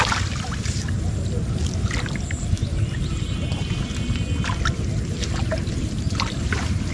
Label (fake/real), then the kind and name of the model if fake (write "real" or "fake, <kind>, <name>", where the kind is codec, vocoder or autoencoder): real